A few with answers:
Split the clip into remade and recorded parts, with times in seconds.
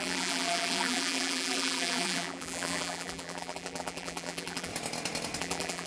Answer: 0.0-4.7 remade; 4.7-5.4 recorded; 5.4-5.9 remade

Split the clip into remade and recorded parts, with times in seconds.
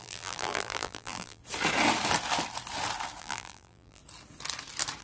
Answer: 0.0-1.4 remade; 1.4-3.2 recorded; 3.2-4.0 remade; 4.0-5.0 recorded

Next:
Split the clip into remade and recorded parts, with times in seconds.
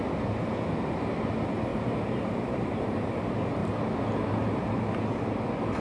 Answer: 0.0-1.7 recorded; 1.7-3.2 remade; 3.2-5.8 recorded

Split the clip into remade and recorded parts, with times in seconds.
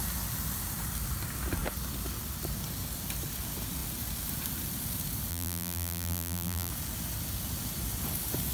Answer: 0.0-5.3 recorded; 5.3-6.7 remade; 6.7-8.5 recorded